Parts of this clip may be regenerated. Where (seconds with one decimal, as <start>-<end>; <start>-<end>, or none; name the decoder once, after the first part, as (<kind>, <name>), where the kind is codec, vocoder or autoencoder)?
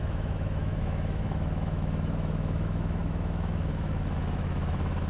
0.0-5.1 (autoencoder, DAC-VAE)